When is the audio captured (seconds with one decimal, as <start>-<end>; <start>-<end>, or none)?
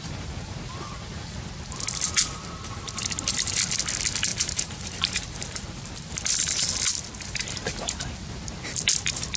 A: 0.0-4.3; 6.1-9.4